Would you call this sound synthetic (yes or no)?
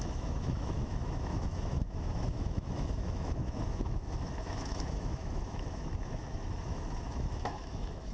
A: yes